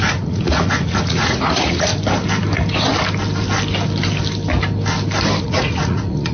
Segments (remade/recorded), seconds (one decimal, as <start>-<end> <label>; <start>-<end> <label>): 0.0-1.9 remade; 1.9-5.4 recorded; 5.4-6.3 remade